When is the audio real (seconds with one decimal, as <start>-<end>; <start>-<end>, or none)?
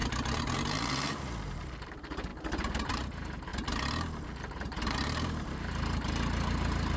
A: 0.0-0.9; 3.5-4.5